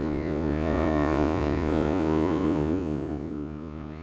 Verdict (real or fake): fake